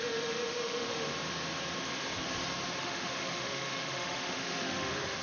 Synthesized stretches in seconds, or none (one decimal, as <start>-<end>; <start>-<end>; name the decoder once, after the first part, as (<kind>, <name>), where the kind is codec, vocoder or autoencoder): 0.0-1.1 (autoencoder, DAC-VAE); 2.8-5.2